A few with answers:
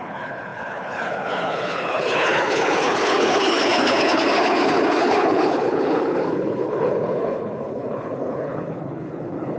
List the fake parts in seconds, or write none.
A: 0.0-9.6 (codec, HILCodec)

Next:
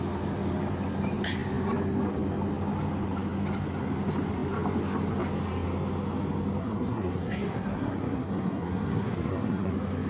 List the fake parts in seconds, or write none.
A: 6.6-9.7 (codec, SNAC)

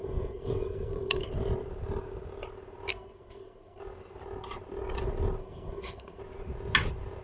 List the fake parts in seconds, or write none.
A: 0.0-1.3 (codec, SNAC); 2.9-3.8; 5.4-6.2

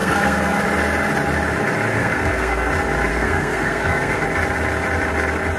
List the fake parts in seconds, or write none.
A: 0.0-0.6 (codec, SNAC); 2.0-2.7; 3.1-4.2

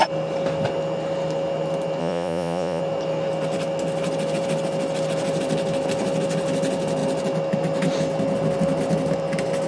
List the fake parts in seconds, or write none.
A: 2.0-2.8 (vocoder, Vocos)

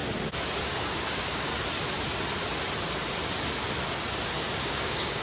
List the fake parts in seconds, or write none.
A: 0.6-1.5 (codec, DAC); 4.6-5.2

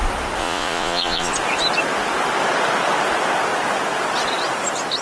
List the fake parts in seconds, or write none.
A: 0.4-1.3 (vocoder, Vocos)